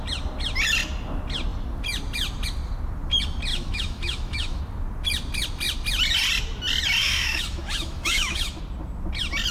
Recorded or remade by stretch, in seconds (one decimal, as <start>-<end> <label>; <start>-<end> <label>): 0.0-3.5 recorded; 3.5-4.6 remade; 4.6-7.0 recorded; 7.0-8.6 remade; 8.6-9.5 recorded